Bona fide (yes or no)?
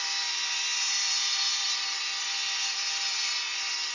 no